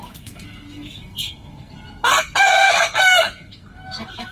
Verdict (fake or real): fake